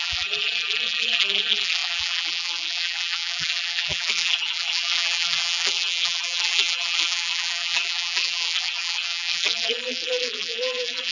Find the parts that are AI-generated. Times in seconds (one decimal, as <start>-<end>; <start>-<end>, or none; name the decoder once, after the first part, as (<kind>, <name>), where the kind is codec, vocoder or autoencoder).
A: 0.0-11.1 (vocoder, BigVGAN v2)